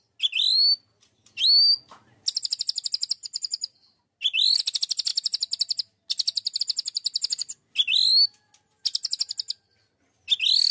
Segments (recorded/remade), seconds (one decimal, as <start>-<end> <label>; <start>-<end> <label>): 0.0-10.7 recorded